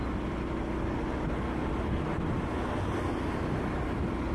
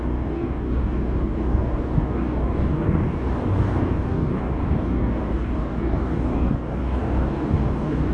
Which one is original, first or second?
first